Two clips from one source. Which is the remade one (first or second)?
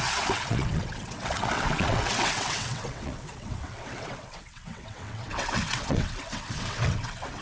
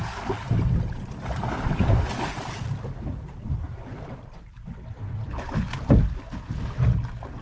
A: first